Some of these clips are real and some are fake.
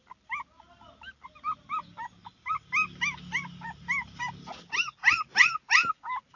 real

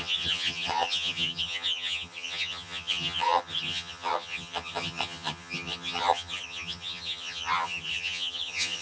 fake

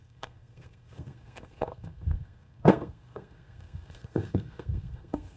fake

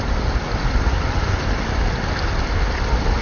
real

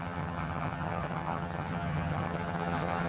fake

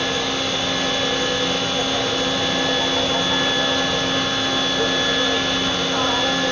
real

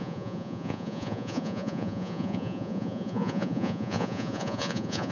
fake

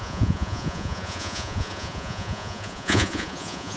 fake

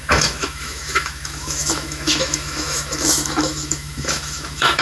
fake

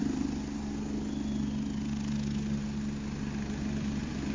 real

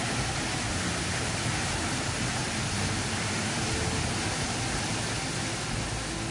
real